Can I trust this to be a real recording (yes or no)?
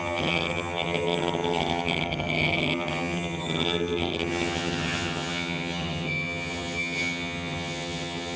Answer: no